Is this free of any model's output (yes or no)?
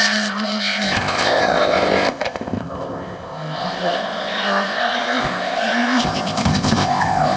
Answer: no